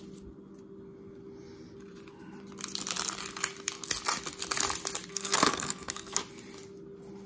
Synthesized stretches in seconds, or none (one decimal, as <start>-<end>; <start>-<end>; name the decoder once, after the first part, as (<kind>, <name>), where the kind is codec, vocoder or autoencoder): 5.1-6.2 (codec, SNAC)